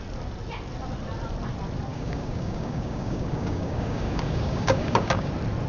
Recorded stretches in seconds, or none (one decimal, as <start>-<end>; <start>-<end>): 0.0-1.9; 5.3-5.7